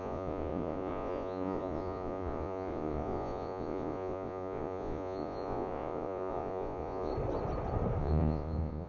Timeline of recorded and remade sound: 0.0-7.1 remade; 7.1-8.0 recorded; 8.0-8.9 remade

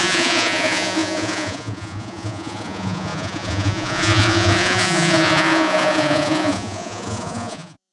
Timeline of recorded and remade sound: 0.0-7.9 remade

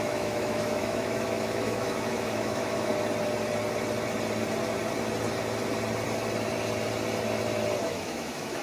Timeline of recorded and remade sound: 0.0-2.9 remade; 2.9-7.8 recorded; 7.8-8.6 remade

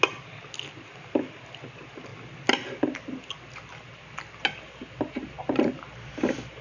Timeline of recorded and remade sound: 0.0-6.6 recorded

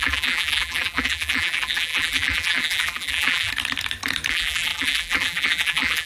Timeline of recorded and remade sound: 0.0-3.5 remade; 3.5-4.3 recorded; 4.3-6.1 remade

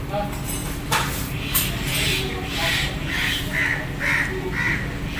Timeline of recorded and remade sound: 0.0-0.6 recorded; 0.6-3.4 remade; 3.4-5.2 recorded

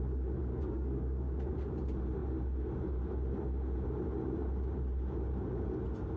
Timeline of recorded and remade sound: 0.0-0.5 recorded; 0.5-1.5 remade; 1.5-6.2 recorded